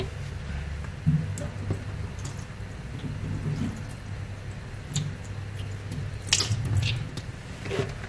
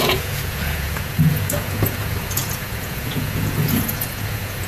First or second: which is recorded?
first